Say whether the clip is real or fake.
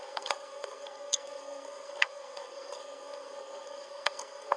fake